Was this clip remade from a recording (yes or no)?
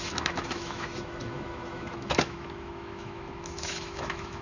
yes